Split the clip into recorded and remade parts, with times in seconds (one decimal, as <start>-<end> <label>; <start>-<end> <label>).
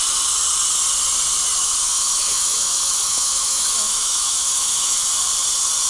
0.0-1.6 recorded; 1.6-5.1 remade; 5.1-5.9 recorded